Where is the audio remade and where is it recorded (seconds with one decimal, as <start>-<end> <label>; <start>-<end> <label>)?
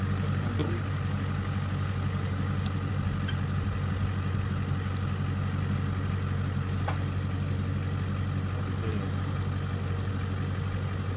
0.0-11.2 recorded